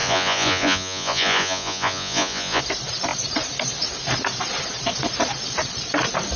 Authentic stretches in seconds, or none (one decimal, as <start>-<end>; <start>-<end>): 2.6-6.4